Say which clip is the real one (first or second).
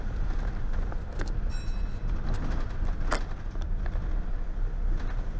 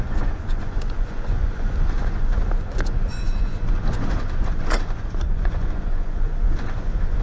first